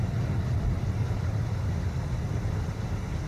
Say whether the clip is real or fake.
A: real